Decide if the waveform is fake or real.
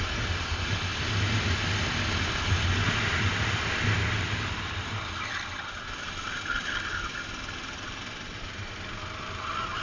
real